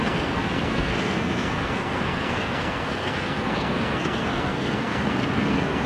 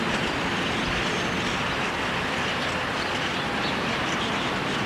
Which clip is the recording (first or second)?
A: second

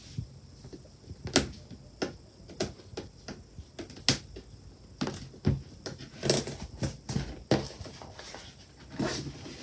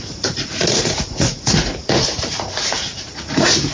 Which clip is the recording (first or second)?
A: first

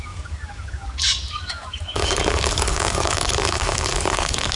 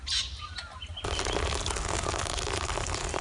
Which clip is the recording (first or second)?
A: second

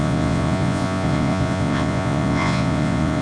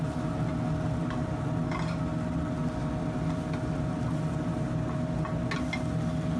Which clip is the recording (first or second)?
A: second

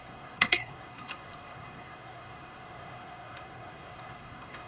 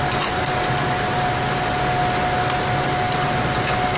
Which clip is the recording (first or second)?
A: second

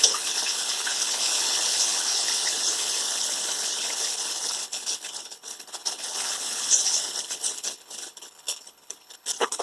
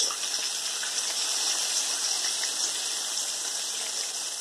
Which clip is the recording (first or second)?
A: second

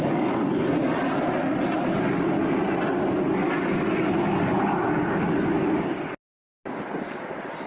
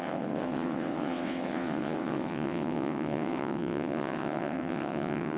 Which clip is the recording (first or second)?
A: first